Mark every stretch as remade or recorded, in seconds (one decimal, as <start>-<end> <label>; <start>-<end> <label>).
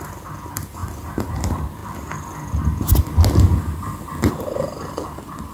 0.0-5.5 recorded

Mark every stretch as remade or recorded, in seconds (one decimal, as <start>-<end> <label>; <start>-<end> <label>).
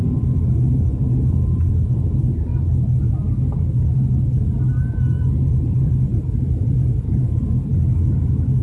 0.0-8.6 recorded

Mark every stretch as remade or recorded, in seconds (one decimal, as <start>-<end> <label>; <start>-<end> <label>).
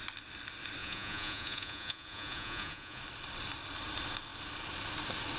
0.0-0.8 recorded; 0.8-3.0 remade; 3.0-5.4 recorded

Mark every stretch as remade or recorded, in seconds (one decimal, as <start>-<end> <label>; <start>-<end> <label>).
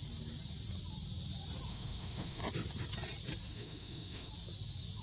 0.0-1.7 recorded; 1.7-2.4 remade; 2.4-3.5 recorded; 3.5-4.3 remade; 4.3-5.0 recorded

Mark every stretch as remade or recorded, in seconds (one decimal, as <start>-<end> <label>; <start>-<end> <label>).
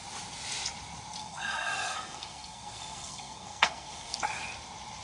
0.0-1.2 recorded; 1.2-4.2 remade; 4.2-5.0 recorded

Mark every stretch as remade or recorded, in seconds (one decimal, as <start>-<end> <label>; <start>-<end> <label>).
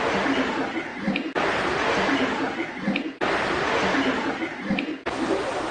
0.0-0.9 recorded; 0.9-4.3 remade; 4.3-5.7 recorded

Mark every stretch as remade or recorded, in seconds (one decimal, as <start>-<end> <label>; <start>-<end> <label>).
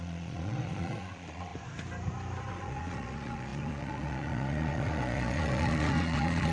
0.0-1.5 remade; 1.5-2.5 recorded; 2.5-6.5 remade